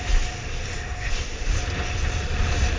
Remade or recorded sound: recorded